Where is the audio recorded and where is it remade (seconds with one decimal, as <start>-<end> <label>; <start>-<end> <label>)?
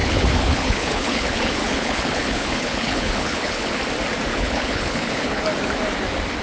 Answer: 0.0-3.8 remade; 3.8-4.3 recorded; 4.3-5.4 remade; 5.4-6.4 recorded